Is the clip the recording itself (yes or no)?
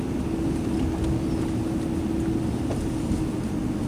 yes